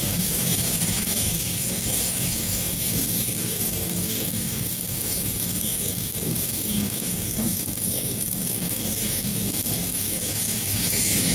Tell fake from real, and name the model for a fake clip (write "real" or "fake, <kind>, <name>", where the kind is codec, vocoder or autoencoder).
fake, codec, DAC